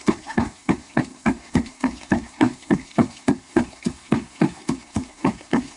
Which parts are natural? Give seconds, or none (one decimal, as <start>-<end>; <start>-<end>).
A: none